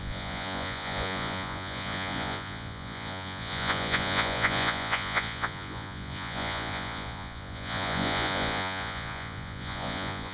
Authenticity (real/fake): fake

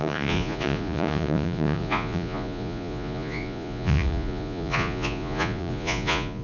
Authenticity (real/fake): fake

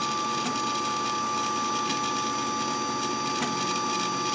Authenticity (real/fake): real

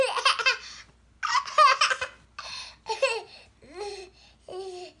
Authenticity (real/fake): real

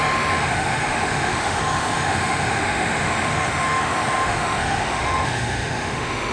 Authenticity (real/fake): fake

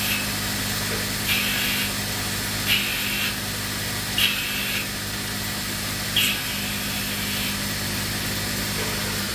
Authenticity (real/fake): real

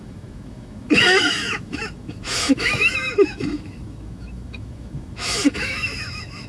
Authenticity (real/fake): fake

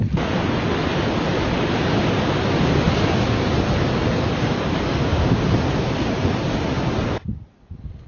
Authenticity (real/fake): real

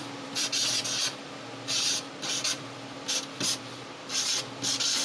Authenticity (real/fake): fake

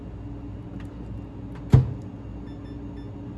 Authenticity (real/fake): real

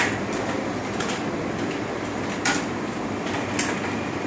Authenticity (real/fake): real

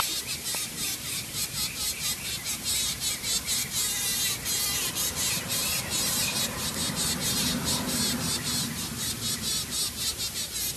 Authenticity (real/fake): real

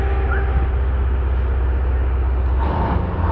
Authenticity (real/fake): real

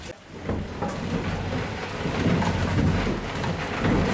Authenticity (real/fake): real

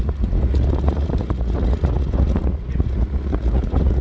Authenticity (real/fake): fake